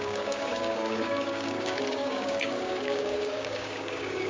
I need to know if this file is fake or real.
fake